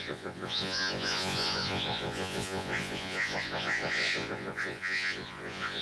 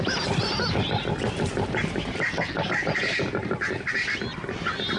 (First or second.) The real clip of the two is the second